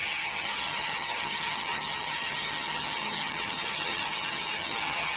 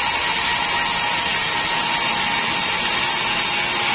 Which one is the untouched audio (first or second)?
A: second